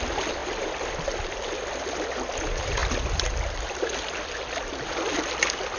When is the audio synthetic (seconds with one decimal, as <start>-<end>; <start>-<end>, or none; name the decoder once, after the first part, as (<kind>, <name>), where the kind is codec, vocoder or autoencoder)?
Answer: 0.4-1.8 (vocoder, BigVGAN v2); 2.8-3.8